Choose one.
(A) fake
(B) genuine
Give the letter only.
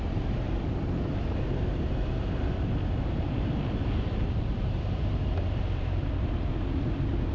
A